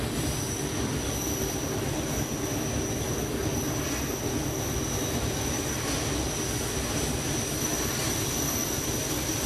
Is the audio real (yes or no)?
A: yes